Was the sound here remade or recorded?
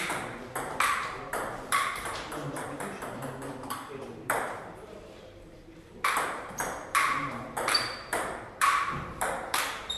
remade